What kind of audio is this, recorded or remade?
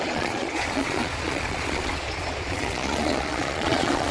remade